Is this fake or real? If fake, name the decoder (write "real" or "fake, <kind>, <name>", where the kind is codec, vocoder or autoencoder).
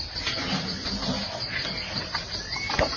real